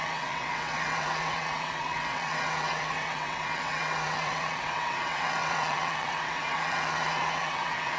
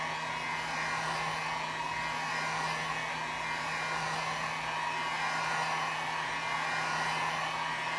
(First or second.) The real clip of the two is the second